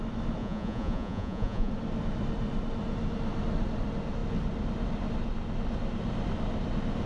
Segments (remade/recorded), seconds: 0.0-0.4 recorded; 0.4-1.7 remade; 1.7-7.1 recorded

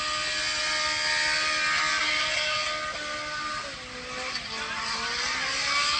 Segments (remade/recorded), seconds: 0.0-1.9 recorded; 1.9-2.6 remade; 2.6-6.0 recorded

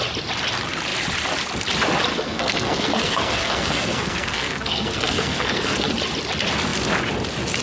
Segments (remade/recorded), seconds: 0.0-2.1 recorded; 2.1-5.9 remade; 5.9-7.6 recorded

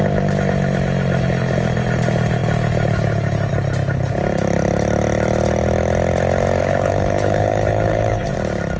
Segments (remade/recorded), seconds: 0.0-6.6 recorded; 6.6-8.3 remade; 8.3-8.8 recorded

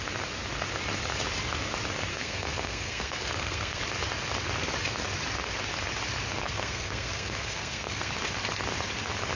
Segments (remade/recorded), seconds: 0.0-2.1 recorded; 2.1-3.8 remade; 3.8-6.4 recorded; 6.4-8.1 remade; 8.1-9.3 recorded

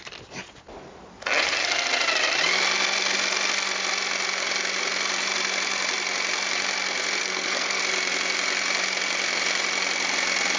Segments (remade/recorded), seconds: 0.0-7.2 recorded; 7.2-7.8 remade; 7.8-10.6 recorded